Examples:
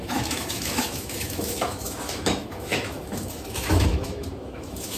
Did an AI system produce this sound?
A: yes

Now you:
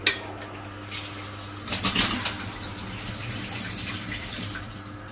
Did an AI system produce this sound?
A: no